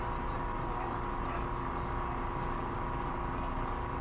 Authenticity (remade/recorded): recorded